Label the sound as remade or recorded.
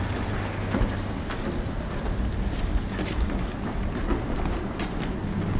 recorded